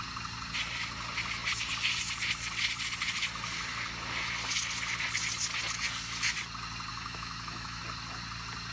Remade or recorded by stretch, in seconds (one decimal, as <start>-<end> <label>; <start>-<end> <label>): 0.0-6.9 recorded; 6.9-7.8 remade; 7.8-8.7 recorded